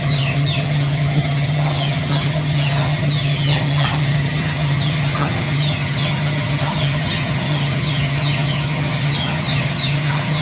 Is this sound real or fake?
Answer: fake